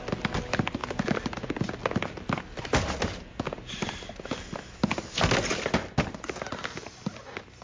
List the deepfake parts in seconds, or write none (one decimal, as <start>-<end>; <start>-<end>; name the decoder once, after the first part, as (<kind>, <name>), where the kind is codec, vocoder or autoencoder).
none